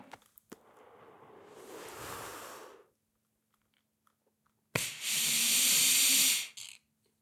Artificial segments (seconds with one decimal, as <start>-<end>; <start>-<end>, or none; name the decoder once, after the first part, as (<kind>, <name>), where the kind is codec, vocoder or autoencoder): none